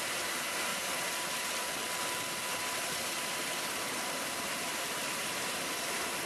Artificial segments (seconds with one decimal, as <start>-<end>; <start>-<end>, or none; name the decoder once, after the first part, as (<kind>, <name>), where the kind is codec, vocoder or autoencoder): 0.0-6.3 (vocoder, BigVGAN v2)